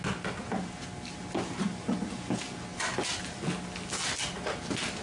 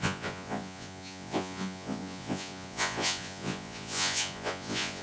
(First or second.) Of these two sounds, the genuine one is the first